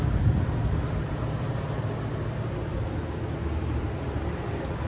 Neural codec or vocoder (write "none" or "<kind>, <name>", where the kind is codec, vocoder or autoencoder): none